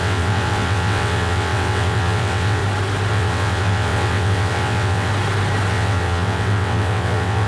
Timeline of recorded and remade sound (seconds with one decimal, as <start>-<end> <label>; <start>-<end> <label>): 0.0-2.6 remade; 2.6-3.1 recorded; 3.1-5.1 remade; 5.1-5.7 recorded; 5.7-7.5 remade